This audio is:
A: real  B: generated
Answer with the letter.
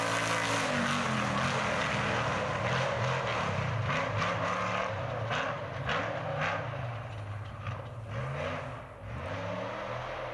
A